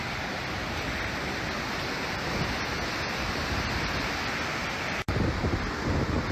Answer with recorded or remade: recorded